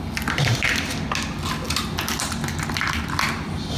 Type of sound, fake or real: real